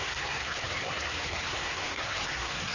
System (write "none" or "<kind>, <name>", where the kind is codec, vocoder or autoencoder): codec, SNAC